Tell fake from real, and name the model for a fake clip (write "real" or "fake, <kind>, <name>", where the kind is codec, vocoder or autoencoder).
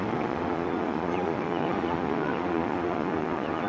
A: fake, vocoder, Vocos